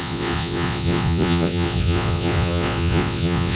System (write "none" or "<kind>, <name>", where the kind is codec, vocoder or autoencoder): vocoder, Vocos